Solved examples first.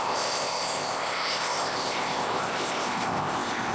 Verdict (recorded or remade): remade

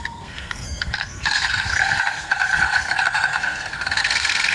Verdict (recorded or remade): remade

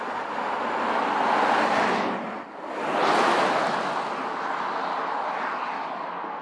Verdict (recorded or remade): recorded